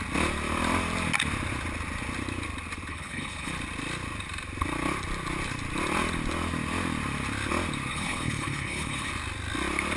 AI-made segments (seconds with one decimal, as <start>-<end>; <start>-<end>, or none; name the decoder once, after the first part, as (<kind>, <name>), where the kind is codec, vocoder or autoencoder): 2.9-3.5 (codec, HILCodec); 7.9-9.1